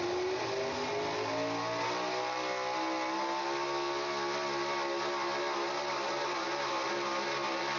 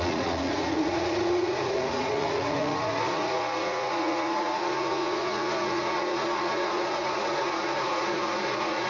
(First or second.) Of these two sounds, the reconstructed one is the second